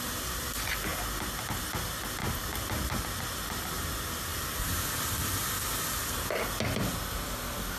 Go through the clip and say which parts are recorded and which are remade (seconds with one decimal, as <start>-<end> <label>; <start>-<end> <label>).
0.0-2.2 recorded; 2.2-3.2 remade; 3.2-4.3 recorded; 4.3-4.8 remade; 4.8-7.8 recorded